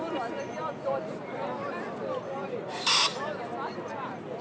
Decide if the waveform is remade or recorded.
recorded